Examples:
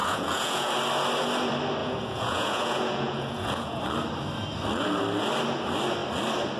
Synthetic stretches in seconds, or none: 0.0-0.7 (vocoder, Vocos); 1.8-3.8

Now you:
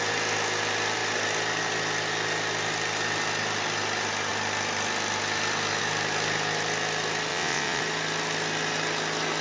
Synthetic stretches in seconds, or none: 7.3-7.8 (vocoder, WaveNeXt)